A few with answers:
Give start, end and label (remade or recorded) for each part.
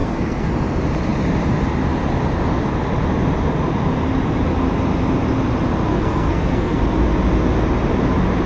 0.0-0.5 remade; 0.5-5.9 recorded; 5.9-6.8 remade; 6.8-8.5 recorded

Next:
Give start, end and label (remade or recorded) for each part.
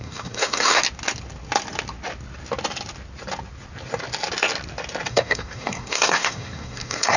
0.0-0.8 remade; 0.8-5.1 recorded; 5.1-7.2 remade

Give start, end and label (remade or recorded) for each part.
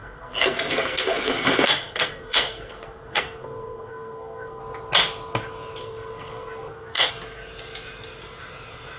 0.0-4.6 remade; 4.6-5.8 recorded; 5.8-7.1 remade; 7.1-9.0 recorded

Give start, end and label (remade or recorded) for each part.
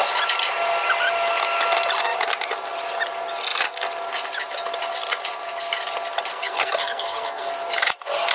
0.0-6.3 recorded; 6.3-7.5 remade; 7.5-8.3 recorded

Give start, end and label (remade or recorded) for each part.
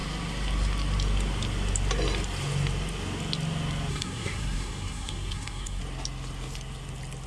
0.0-3.9 recorded; 3.9-5.8 remade; 5.8-7.3 recorded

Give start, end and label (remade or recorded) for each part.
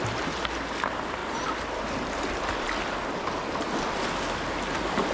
0.0-5.1 recorded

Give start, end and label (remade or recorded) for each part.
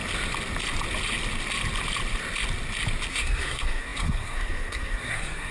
0.0-3.1 recorded; 3.1-5.5 remade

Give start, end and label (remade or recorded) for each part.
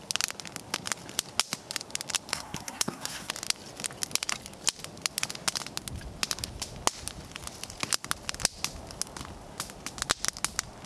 0.0-2.3 recorded; 2.3-3.3 remade; 3.3-10.9 recorded